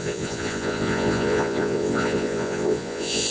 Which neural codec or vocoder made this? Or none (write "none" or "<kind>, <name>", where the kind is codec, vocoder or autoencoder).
vocoder, Vocos